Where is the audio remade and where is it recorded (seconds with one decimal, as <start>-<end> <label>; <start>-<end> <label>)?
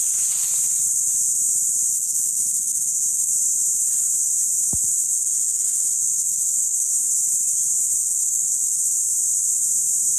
0.0-1.9 recorded; 1.9-3.3 remade; 3.3-4.9 recorded; 4.9-6.9 remade; 6.9-8.0 recorded; 8.0-8.8 remade; 8.8-10.2 recorded